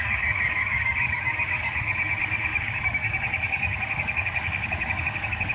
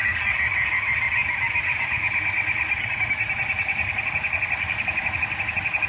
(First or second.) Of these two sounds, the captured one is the second